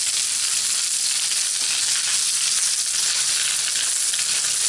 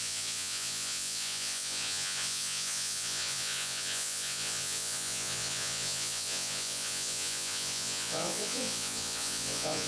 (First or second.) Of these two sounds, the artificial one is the second